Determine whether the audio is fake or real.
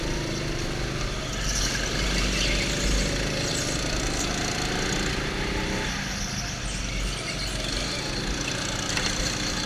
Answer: real